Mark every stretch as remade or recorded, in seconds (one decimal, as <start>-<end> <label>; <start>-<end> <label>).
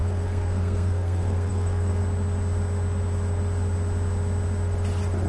0.0-2.0 remade; 2.0-5.3 recorded